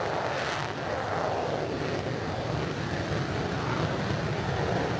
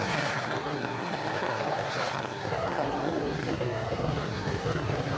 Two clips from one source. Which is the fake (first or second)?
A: second